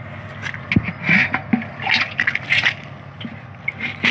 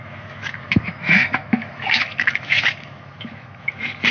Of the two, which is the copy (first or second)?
second